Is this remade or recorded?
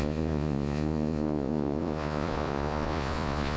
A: remade